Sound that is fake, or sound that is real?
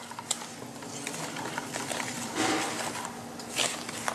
real